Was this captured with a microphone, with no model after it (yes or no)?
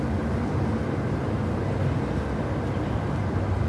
yes